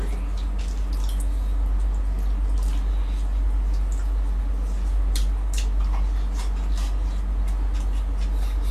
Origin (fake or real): real